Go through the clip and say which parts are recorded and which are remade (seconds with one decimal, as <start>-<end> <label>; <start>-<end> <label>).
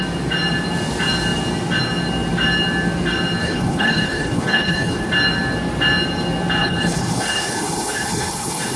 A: 0.0-3.4 recorded; 3.4-5.1 remade; 5.1-6.6 recorded; 6.6-8.8 remade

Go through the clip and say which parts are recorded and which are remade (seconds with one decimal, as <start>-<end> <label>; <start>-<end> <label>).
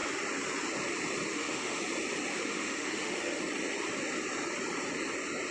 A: 0.0-1.3 recorded; 1.3-1.8 remade; 1.8-2.3 recorded; 2.3-3.4 remade; 3.4-5.5 recorded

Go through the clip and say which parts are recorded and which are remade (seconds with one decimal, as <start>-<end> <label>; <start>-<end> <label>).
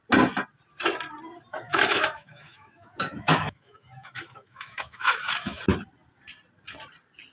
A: 0.0-1.5 recorded; 1.5-5.6 remade; 5.6-7.3 recorded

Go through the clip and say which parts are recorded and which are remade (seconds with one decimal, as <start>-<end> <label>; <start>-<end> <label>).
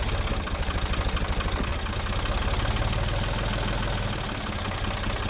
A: 0.0-5.3 recorded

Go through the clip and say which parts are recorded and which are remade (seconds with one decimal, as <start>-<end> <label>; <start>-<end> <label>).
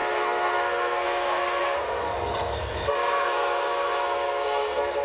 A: 0.0-5.0 remade